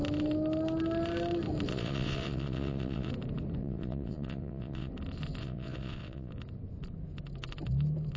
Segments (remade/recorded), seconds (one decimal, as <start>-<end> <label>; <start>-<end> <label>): 0.0-1.7 recorded; 1.7-3.1 remade; 3.1-3.6 recorded; 3.6-4.9 remade; 4.9-5.4 recorded; 5.4-6.3 remade; 6.3-8.2 recorded